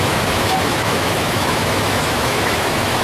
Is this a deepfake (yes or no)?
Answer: yes